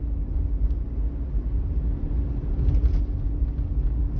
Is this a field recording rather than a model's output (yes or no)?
yes